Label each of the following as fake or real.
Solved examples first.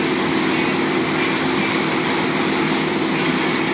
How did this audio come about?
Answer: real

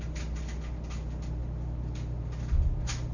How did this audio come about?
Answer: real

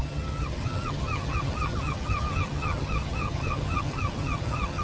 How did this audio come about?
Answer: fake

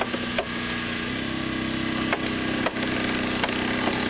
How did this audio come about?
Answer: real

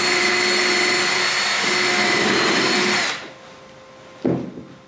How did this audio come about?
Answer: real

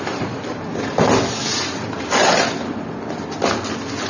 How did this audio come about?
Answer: real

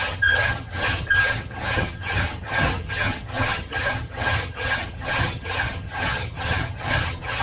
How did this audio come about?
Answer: fake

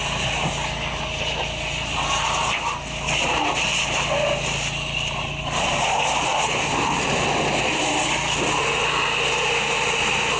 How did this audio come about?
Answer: real